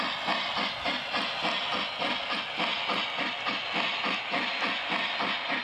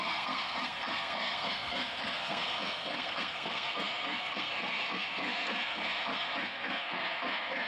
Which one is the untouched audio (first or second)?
first